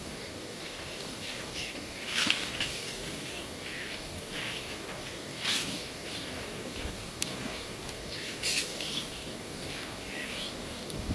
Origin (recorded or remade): remade